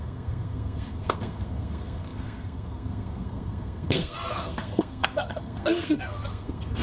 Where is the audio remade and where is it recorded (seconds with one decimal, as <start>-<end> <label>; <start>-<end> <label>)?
0.0-6.8 remade